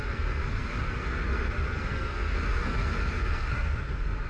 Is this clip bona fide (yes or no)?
no